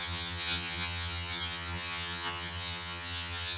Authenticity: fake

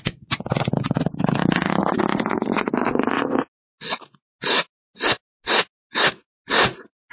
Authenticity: real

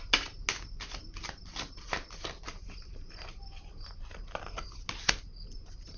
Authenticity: real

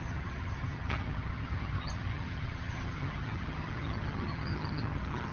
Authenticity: fake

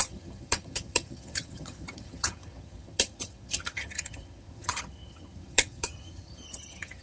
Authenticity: fake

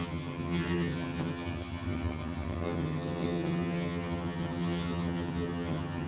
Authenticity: fake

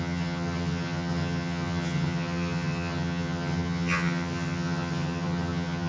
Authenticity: fake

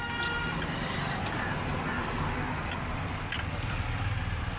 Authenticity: real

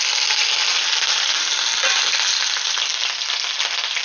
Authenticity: real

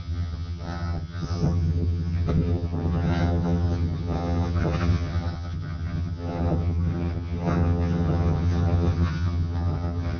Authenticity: fake